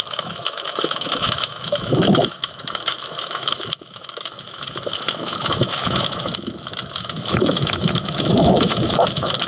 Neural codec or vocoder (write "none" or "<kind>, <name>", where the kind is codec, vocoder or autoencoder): autoencoder, DAC-VAE